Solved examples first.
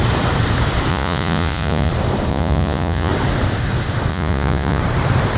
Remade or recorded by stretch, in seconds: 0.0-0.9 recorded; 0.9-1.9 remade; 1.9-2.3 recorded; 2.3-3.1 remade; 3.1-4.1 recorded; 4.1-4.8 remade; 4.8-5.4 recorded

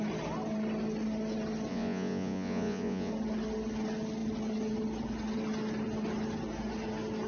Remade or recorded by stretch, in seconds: 0.0-1.7 recorded; 1.7-3.1 remade; 3.1-7.3 recorded

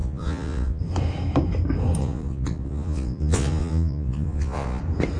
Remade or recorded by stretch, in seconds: 0.0-0.8 remade; 0.8-2.0 recorded; 2.0-4.8 remade; 4.8-5.2 recorded

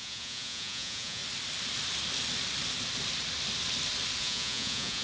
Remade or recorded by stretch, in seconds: 0.0-1.2 remade; 1.2-4.2 recorded; 4.2-5.0 remade